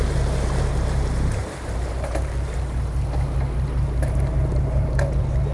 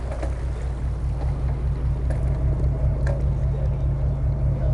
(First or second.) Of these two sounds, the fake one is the first